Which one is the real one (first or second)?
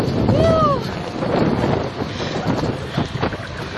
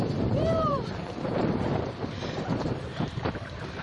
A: first